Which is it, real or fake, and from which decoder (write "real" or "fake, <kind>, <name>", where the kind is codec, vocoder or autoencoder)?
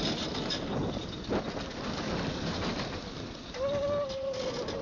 real